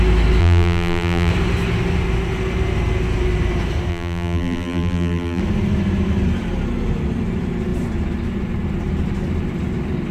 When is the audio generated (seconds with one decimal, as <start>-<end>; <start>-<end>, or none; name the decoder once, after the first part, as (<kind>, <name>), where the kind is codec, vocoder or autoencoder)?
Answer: 0.4-1.3 (vocoder, BigVGAN v2); 3.9-5.4